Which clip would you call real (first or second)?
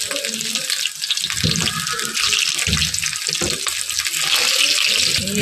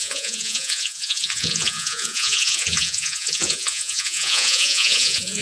first